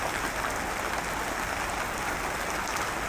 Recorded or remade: recorded